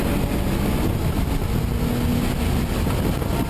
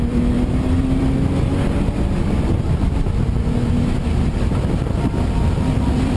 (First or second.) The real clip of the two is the first